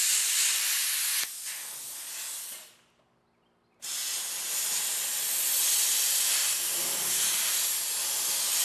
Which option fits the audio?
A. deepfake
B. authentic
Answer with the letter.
B